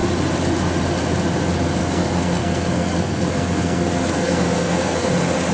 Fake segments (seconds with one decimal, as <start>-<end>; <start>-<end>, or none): 1.8-5.1